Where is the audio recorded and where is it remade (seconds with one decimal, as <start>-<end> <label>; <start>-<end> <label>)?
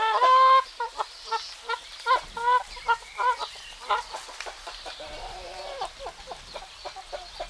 0.0-7.5 recorded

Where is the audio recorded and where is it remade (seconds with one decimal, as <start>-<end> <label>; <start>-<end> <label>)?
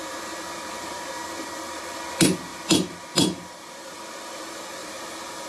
0.0-2.5 recorded; 2.5-4.0 remade; 4.0-4.8 recorded; 4.8-5.5 remade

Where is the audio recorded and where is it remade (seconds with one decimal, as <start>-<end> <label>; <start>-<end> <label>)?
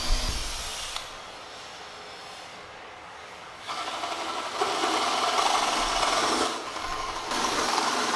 0.0-2.5 recorded; 2.5-3.9 remade; 3.9-6.2 recorded; 6.2-8.2 remade